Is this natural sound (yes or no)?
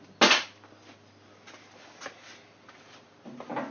yes